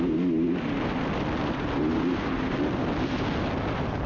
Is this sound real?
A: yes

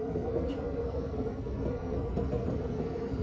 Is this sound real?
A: no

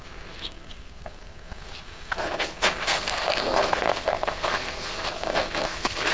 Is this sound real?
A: no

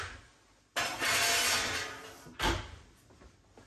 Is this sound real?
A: yes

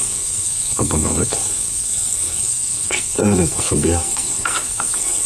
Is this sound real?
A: no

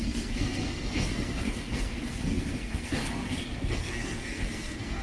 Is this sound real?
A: no